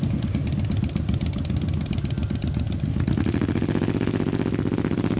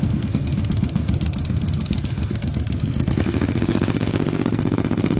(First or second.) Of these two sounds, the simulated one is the second